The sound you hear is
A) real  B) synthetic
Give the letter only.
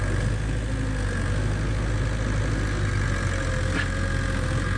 A